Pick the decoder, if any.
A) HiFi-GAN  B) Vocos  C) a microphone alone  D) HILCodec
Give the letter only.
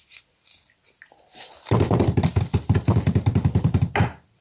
C